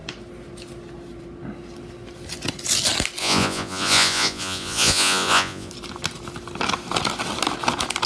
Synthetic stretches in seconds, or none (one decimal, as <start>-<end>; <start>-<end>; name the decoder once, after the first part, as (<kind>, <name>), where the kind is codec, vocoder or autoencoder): 3.2-5.7 (vocoder, Vocos)